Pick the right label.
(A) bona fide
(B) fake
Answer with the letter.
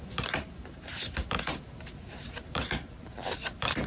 B